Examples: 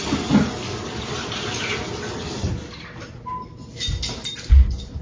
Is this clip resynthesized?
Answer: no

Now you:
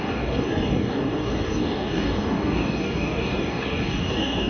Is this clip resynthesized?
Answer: yes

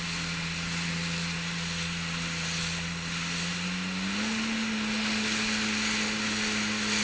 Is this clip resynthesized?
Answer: no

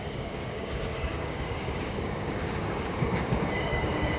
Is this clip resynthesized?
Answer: yes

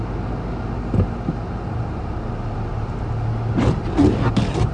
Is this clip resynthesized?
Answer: no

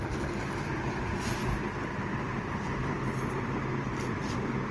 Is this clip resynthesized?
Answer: no